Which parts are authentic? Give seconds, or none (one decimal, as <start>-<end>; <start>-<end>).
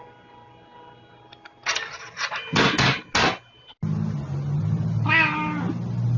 0.0-6.2